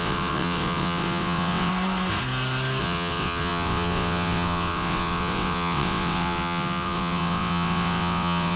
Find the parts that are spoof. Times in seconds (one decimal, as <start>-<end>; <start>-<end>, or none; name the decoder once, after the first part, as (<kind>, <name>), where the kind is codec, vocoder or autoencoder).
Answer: 0.0-1.7 (vocoder, WaveNeXt); 2.8-8.6